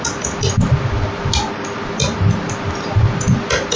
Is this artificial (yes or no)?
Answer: no